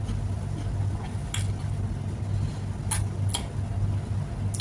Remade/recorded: recorded